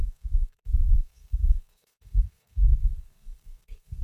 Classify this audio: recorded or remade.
remade